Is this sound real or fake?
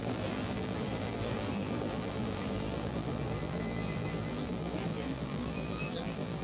fake